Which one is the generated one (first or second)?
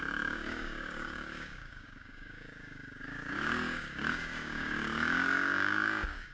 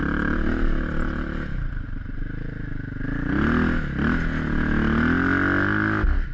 first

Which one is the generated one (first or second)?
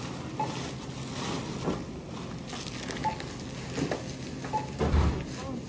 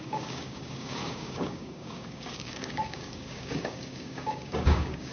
second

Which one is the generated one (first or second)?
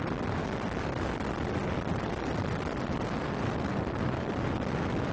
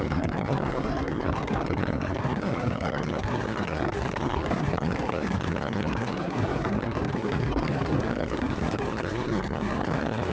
second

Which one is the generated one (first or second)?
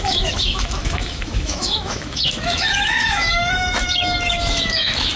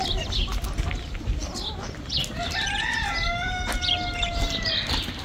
first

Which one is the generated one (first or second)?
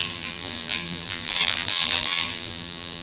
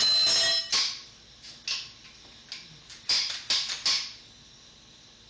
first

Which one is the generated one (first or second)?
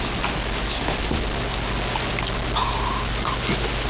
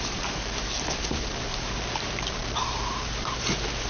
second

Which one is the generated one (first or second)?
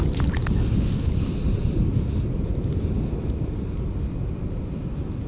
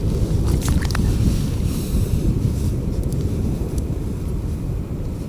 second